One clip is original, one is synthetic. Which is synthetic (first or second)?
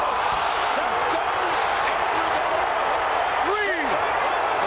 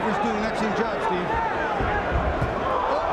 first